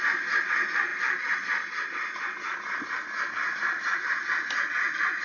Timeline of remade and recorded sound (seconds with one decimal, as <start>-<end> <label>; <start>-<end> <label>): 0.0-5.2 recorded